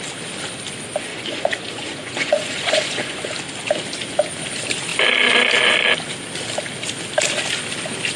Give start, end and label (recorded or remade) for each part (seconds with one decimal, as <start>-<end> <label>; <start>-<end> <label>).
0.0-1.1 recorded; 1.1-3.3 remade; 3.3-8.2 recorded